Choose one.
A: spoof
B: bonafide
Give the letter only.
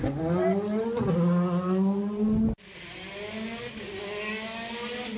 B